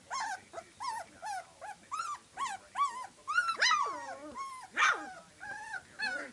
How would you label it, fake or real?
real